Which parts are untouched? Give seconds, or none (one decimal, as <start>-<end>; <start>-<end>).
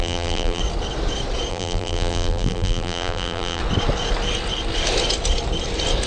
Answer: 0.6-1.5; 3.6-6.1